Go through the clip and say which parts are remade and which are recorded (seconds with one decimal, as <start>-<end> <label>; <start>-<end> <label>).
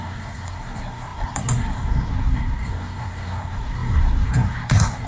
0.0-5.1 remade